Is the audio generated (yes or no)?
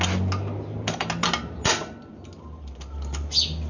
no